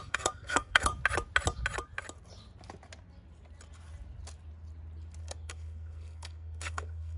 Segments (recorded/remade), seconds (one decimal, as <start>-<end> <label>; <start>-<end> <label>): 0.0-0.9 remade; 0.9-5.2 recorded; 5.2-7.2 remade